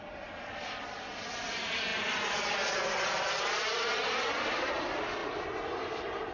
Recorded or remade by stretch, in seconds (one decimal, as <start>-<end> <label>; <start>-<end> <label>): 0.0-6.3 recorded